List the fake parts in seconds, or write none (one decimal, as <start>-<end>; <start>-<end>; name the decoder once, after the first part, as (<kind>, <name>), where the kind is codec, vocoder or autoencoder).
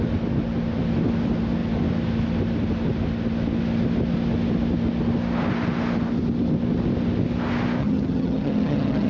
7.8-9.1 (vocoder, HiFi-GAN)